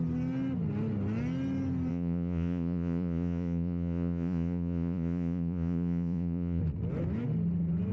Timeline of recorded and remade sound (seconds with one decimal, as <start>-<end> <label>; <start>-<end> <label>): 0.0-1.9 recorded; 1.9-6.6 remade; 6.6-7.9 recorded